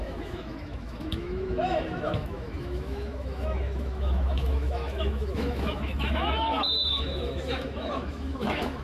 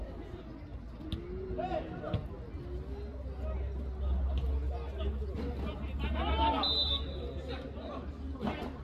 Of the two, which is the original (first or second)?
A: second